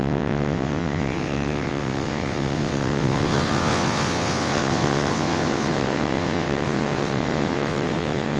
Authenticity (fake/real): fake